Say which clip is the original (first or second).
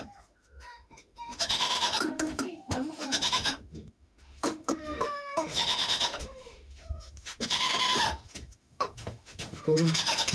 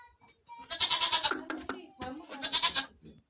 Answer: second